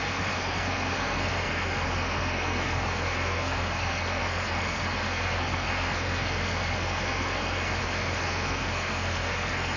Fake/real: fake